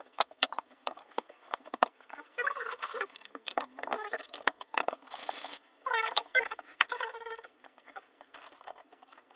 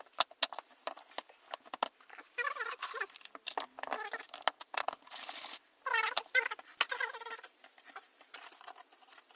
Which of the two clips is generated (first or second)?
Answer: first